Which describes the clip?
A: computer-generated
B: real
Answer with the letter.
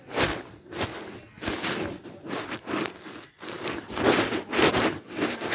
B